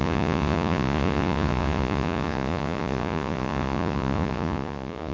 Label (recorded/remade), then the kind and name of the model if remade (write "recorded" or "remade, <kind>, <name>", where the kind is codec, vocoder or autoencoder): remade, vocoder, Vocos